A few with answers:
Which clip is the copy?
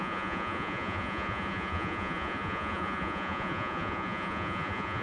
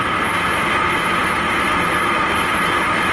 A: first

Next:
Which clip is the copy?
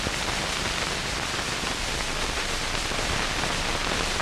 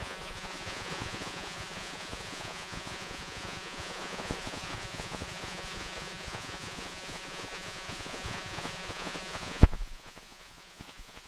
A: second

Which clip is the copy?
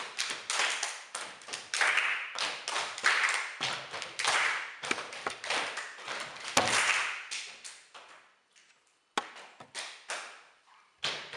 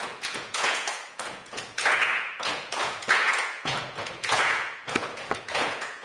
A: second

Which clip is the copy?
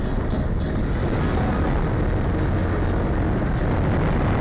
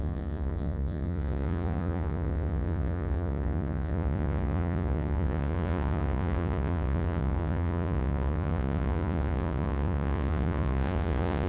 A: second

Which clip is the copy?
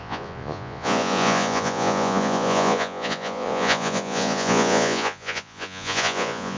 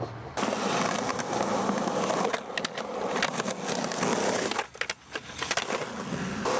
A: first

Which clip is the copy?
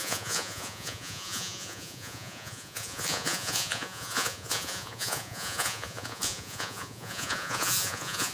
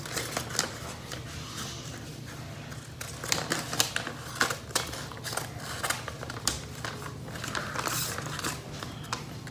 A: first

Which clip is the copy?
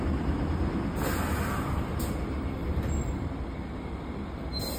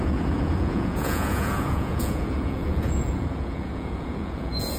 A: second